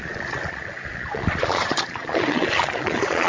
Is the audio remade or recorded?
remade